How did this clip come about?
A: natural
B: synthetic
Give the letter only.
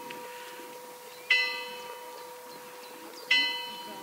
A